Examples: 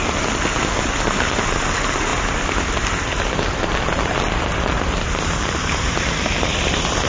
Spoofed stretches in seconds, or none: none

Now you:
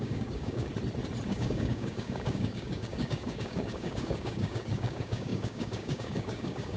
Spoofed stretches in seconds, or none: 0.0-0.7; 1.3-6.8

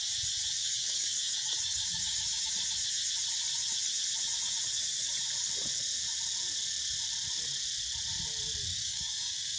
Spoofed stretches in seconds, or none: 0.6-2.5; 8.7-9.6